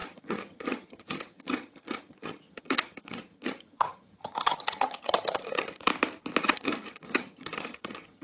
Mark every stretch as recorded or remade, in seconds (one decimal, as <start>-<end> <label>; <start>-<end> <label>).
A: 0.0-5.9 remade; 5.9-6.4 recorded; 6.4-8.2 remade